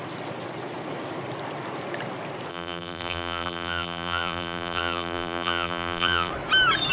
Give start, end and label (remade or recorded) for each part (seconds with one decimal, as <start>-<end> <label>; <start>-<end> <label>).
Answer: 0.0-2.5 recorded; 2.5-6.3 remade; 6.3-6.9 recorded

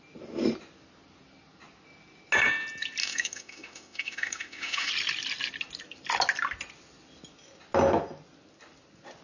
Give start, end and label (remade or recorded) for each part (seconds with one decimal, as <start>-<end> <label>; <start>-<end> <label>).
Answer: 0.0-3.0 recorded; 3.0-4.9 remade; 4.9-9.2 recorded

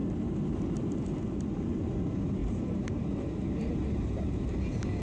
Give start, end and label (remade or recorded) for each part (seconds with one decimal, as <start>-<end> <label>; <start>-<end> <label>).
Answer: 0.0-1.4 recorded; 1.4-5.0 remade

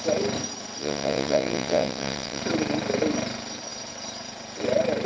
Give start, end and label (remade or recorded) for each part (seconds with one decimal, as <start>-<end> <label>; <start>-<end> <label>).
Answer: 0.0-0.8 recorded; 0.8-2.4 remade; 2.4-5.1 recorded